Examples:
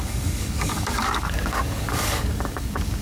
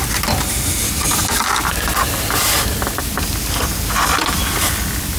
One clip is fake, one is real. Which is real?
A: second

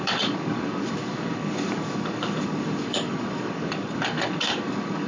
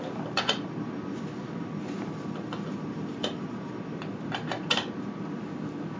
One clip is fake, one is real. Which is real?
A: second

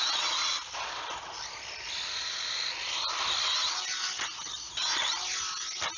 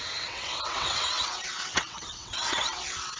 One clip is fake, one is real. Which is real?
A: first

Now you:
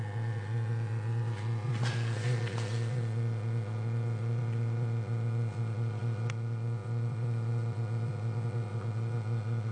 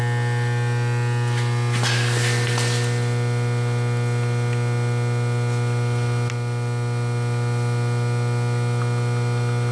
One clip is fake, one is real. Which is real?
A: second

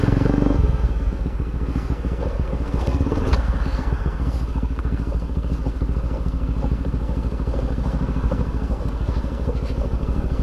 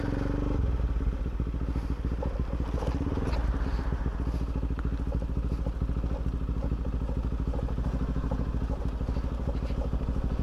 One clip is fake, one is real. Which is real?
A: second